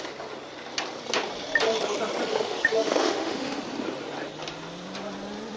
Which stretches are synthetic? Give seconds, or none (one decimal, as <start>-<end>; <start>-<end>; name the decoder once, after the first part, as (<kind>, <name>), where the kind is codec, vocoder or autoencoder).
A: 2.3-3.6 (autoencoder, DAC-VAE)